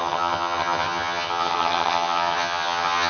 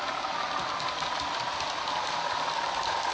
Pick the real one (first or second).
second